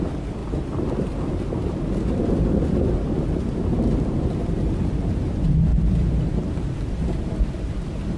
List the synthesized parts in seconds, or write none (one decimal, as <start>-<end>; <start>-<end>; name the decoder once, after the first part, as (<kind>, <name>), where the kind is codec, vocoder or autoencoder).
none